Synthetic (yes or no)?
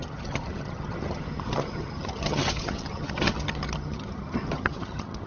yes